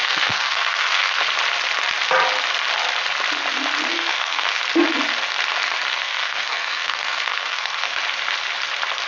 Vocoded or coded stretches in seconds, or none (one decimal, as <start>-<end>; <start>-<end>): 0.0-1.2; 3.9-4.6; 5.9-7.9